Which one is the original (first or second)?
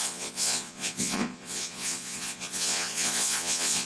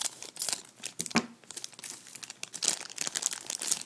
second